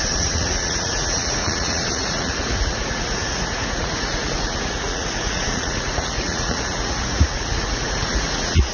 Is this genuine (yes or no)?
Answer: no